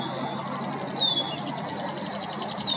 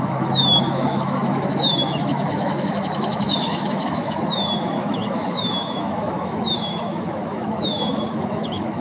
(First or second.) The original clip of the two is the first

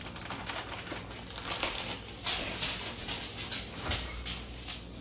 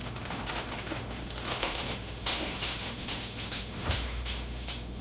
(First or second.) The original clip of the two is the first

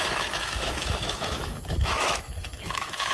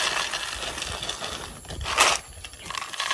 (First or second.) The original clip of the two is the second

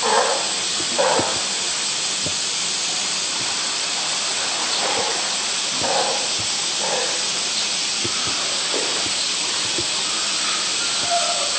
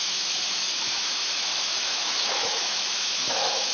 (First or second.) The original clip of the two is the first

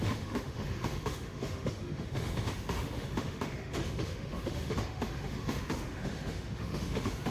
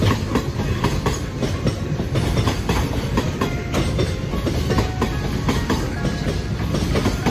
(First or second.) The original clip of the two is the second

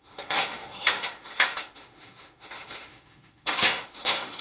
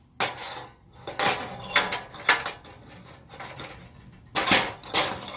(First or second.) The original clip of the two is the second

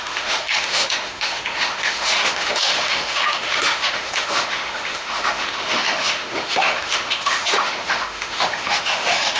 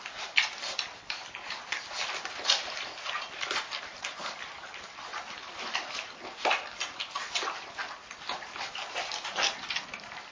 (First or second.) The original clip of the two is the second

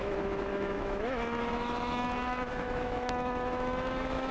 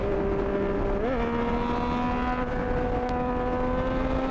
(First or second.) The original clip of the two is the second